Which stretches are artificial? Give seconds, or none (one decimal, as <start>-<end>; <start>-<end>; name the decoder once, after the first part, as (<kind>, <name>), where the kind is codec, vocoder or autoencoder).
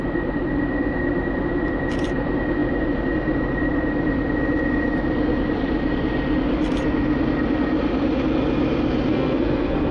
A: 9.1-9.9 (codec, SNAC)